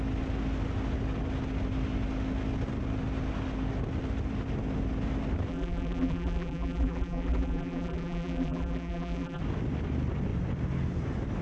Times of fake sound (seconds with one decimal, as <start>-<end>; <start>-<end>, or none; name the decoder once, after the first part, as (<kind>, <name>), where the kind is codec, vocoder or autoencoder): 5.5-9.4 (vocoder, BigVGAN v2)